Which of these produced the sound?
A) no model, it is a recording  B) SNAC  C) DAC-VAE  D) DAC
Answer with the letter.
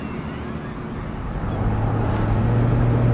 A